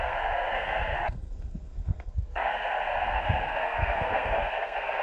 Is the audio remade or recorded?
remade